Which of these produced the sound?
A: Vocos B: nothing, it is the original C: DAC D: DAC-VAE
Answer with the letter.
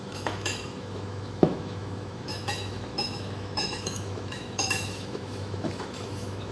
D